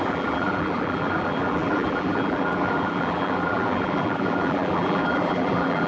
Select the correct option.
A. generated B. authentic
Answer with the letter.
A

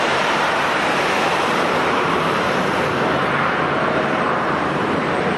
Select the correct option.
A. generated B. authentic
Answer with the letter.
A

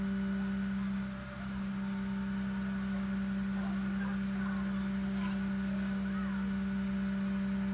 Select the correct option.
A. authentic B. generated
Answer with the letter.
A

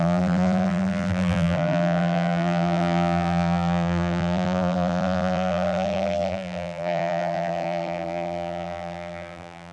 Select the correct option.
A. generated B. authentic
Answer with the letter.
A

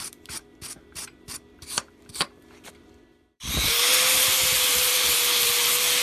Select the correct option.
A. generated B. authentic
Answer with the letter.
A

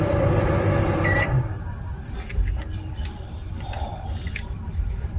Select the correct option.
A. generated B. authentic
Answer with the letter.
A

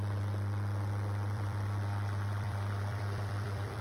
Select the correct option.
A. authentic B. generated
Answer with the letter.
B